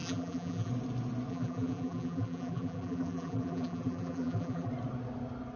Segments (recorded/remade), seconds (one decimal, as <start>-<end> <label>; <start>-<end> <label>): 0.0-0.7 remade; 0.7-1.3 recorded; 1.3-4.7 remade; 4.7-5.6 recorded